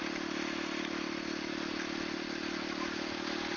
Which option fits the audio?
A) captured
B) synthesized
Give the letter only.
A